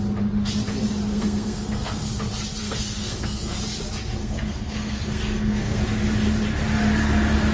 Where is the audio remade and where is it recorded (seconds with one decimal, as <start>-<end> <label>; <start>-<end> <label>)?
0.0-1.1 recorded; 1.1-2.1 remade; 2.1-2.6 recorded; 2.6-3.6 remade; 3.6-4.2 recorded; 4.2-5.8 remade; 5.8-7.5 recorded